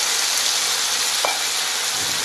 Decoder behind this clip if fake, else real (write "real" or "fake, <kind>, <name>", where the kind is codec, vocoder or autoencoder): real